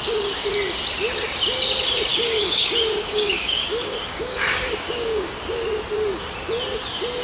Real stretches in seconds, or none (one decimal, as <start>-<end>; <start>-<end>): 0.0-2.1; 5.4-7.2